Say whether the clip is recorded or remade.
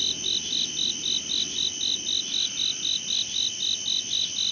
recorded